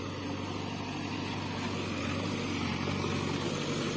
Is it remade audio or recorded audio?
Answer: recorded